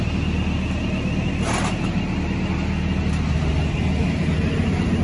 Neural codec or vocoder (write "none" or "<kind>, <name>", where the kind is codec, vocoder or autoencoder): none